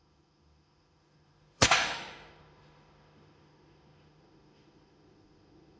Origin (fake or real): fake